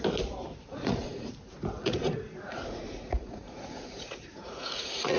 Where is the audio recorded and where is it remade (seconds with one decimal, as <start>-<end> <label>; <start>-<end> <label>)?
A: 0.0-0.7 recorded; 0.7-1.3 remade; 1.3-1.8 recorded; 1.8-5.2 remade